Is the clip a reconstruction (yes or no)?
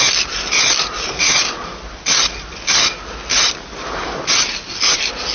no